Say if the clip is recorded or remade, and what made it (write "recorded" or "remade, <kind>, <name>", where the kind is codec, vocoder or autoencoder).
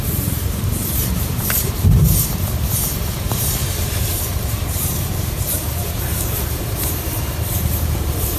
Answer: remade, vocoder, BigVGAN v2